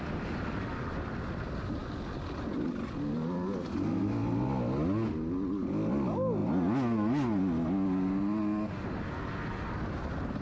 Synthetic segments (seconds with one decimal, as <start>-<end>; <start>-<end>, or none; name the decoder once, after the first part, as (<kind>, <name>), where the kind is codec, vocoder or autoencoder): none